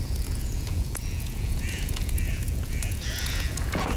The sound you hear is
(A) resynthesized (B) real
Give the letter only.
A